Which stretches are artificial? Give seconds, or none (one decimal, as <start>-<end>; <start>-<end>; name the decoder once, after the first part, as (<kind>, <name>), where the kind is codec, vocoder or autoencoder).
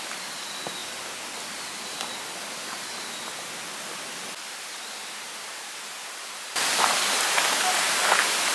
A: none